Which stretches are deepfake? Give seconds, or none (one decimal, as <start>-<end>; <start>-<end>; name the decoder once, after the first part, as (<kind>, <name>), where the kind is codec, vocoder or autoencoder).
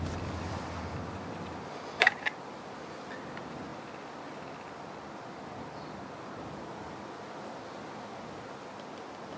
none